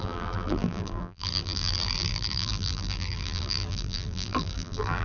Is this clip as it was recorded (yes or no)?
no